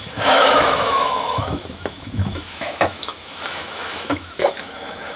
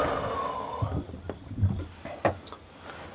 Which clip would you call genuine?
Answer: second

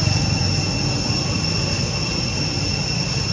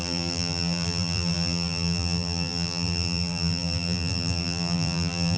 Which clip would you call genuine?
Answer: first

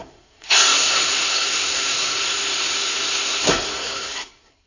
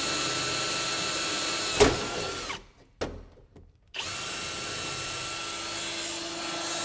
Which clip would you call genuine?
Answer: second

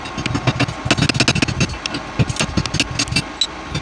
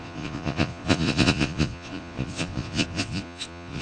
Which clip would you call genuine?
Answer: first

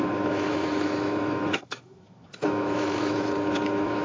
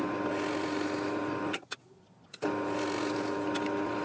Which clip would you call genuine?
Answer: second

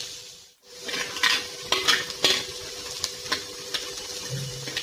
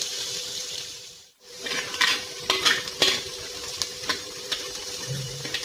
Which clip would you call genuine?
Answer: first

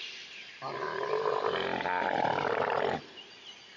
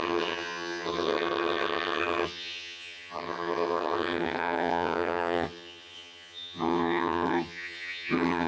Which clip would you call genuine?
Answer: first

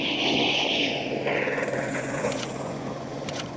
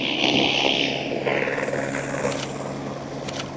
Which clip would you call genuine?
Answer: second